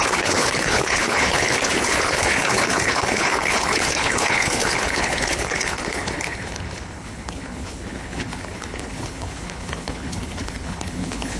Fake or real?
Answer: fake